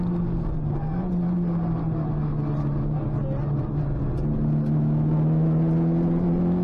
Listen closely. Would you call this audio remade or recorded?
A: recorded